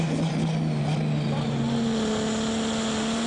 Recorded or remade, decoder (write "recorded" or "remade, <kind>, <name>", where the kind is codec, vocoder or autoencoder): recorded